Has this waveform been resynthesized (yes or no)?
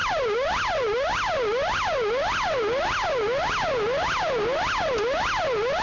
no